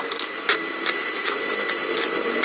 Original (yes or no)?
yes